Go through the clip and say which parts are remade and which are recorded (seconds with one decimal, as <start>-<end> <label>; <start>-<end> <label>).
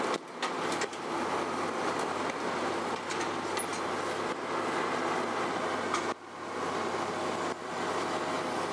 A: 0.0-0.9 recorded; 0.9-1.4 remade; 1.4-8.7 recorded